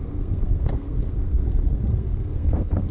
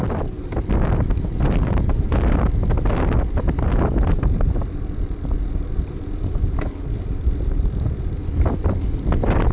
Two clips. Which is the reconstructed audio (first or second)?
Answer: first